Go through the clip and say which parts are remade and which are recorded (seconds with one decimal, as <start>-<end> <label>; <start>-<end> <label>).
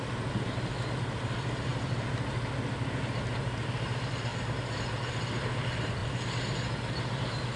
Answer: 0.0-7.6 recorded